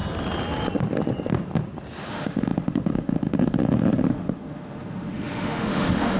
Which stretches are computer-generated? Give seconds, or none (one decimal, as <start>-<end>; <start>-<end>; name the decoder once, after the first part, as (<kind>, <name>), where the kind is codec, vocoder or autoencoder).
2.1-6.2 (autoencoder, DAC-VAE)